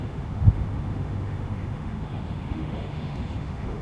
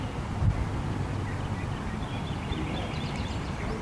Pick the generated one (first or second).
first